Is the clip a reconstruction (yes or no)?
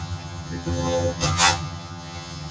yes